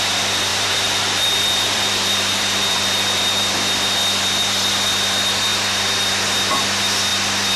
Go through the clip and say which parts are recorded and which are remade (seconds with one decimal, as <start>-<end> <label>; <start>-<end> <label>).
0.0-0.5 recorded; 0.5-3.3 remade; 3.3-7.6 recorded